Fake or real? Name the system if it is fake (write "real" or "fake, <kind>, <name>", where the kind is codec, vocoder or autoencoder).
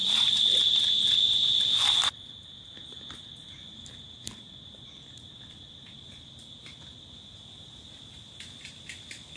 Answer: real